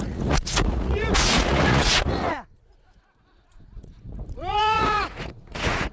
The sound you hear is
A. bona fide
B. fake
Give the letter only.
B